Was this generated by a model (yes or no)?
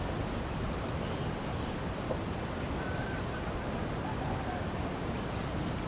no